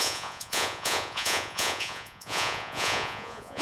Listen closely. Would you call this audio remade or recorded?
remade